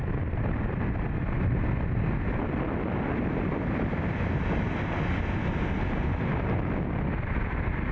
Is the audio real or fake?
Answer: real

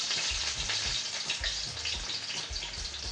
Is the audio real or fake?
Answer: real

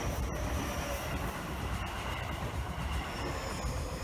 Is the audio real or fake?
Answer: fake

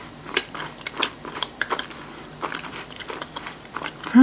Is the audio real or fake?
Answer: fake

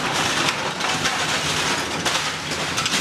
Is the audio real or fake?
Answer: real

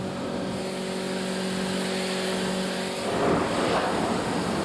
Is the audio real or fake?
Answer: real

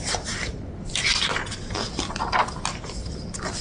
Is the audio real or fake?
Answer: real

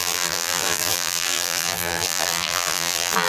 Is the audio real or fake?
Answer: fake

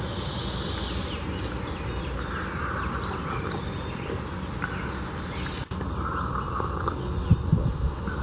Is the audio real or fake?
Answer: real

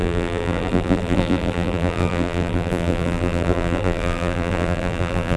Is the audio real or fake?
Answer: fake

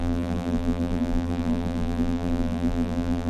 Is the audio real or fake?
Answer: fake